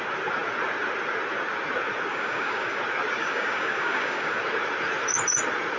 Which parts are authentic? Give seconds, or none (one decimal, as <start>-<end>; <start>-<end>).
0.0-2.1; 2.8-3.2; 4.4-5.8